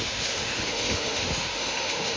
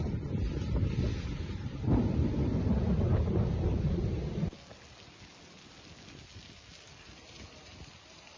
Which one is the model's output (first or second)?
first